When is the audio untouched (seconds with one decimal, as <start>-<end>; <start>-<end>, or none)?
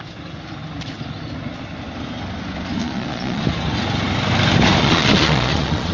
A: 0.0-2.8; 3.4-4.8